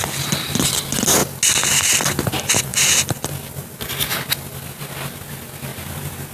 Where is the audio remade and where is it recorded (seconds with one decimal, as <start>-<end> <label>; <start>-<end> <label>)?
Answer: 0.0-5.7 recorded; 5.7-6.3 remade